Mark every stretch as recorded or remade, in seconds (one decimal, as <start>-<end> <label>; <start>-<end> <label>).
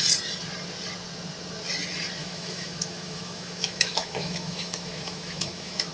0.0-2.2 recorded; 2.2-5.9 remade